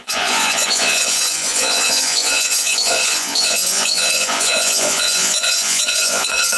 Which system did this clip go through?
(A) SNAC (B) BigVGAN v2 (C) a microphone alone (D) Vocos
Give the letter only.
D